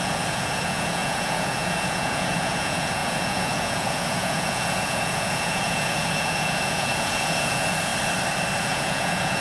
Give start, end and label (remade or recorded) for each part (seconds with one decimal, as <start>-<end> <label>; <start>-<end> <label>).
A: 0.0-7.9 remade; 7.9-8.6 recorded; 8.6-9.4 remade